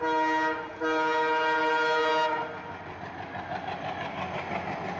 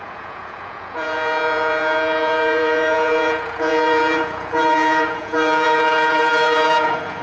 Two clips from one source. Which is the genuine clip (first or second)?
first